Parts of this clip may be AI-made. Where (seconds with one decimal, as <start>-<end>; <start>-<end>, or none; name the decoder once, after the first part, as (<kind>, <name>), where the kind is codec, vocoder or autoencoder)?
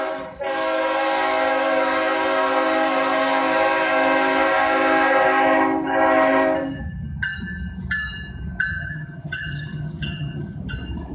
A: 8.7-10.6 (vocoder, HiFi-GAN)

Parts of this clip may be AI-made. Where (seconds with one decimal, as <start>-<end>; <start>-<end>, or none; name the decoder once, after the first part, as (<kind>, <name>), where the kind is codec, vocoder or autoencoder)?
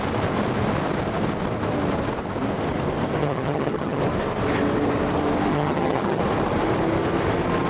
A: 3.2-4.0 (vocoder, HiFi-GAN); 5.5-6.2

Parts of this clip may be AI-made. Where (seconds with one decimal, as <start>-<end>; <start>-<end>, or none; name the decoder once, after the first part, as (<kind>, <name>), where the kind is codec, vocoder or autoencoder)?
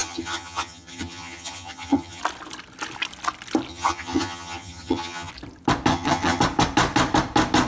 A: 0.0-2.2 (vocoder, HiFi-GAN); 3.7-5.3; 5.9-6.4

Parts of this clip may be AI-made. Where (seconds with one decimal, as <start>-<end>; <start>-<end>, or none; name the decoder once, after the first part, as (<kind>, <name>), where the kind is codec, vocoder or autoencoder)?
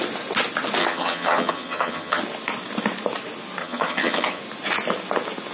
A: 0.8-2.2 (vocoder, HiFi-GAN); 3.6-4.4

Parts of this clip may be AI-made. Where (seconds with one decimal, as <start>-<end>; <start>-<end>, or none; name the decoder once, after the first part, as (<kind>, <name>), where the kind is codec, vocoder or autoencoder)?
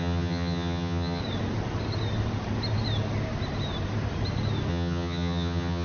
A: 0.0-1.2 (vocoder, HiFi-GAN); 4.7-5.8